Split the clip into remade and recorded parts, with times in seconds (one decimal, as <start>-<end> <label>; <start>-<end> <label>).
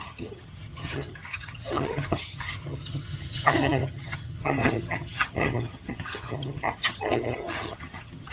0.0-8.3 remade